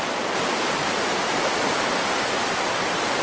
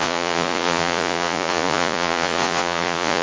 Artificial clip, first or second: second